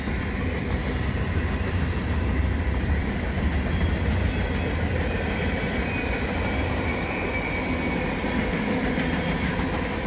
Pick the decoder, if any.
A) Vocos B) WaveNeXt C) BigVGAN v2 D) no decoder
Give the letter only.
D